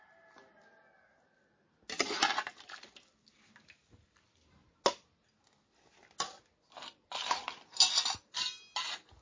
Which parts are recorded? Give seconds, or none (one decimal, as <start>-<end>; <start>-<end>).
0.0-9.2